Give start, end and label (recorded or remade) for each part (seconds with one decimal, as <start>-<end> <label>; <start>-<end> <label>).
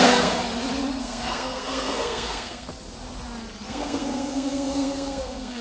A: 0.0-0.4 remade; 0.4-1.0 recorded; 1.0-2.7 remade; 2.7-3.7 recorded; 3.7-5.6 remade